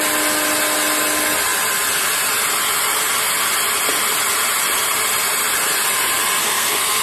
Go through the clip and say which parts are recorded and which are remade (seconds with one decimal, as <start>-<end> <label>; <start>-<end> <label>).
0.0-6.4 recorded; 6.4-7.0 remade